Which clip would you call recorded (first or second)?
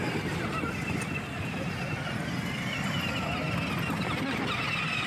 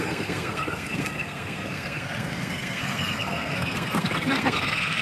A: first